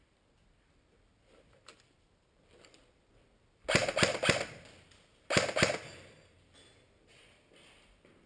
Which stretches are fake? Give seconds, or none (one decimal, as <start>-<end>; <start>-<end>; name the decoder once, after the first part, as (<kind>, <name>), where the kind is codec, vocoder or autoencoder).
none